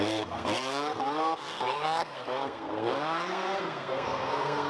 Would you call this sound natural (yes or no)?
no